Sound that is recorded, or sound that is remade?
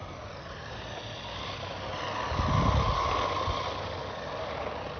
recorded